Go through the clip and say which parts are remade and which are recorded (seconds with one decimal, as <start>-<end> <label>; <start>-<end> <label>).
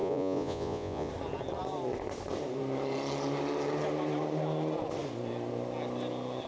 0.0-1.1 remade; 1.1-6.5 recorded